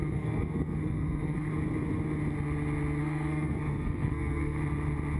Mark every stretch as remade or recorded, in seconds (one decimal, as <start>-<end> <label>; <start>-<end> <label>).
0.0-1.5 remade; 1.5-3.0 recorded; 3.0-4.6 remade; 4.6-5.2 recorded